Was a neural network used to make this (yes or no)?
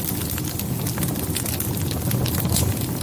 no